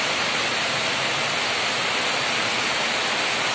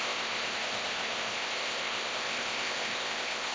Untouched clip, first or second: first